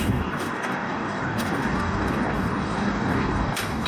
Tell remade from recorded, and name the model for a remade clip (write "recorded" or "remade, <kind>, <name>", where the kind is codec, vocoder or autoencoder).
remade, codec, DAC